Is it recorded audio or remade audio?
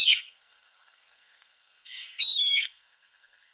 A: remade